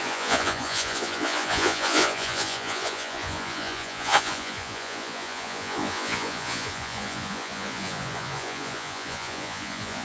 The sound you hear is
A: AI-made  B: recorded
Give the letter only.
A